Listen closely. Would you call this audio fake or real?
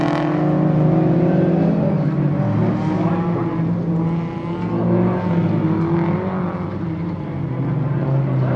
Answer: real